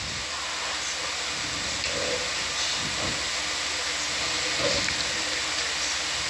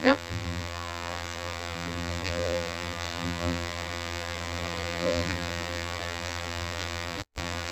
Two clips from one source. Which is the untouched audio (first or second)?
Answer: first